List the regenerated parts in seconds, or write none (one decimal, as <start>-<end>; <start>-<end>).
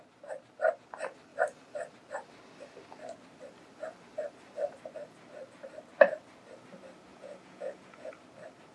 7.1-8.1